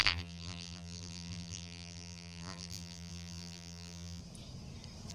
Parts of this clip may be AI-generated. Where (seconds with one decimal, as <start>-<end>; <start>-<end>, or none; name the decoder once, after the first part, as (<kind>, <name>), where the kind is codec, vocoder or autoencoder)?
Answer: 0.0-4.2 (vocoder, BigVGAN v2)